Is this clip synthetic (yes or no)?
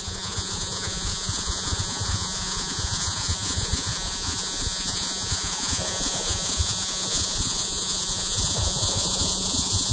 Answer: yes